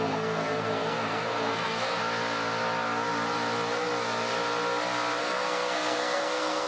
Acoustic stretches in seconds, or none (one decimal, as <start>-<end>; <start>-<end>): 2.0-5.2